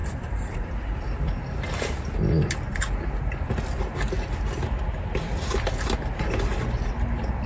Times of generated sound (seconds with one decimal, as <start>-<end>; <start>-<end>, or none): 0.0-1.9